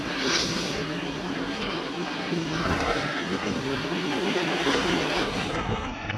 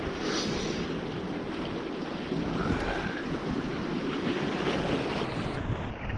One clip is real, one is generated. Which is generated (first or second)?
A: first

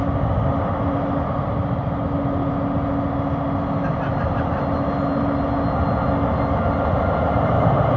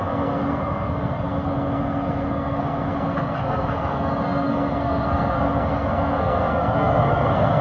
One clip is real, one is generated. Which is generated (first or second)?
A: second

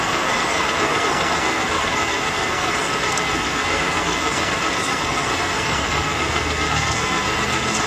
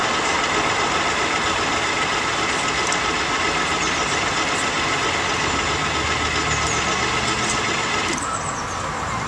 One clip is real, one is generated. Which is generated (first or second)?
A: first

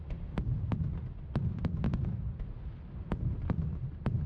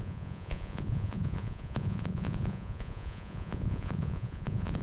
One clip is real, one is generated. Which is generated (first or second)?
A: second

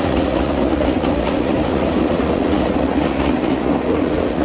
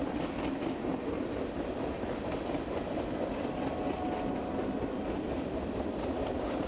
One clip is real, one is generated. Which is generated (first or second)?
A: first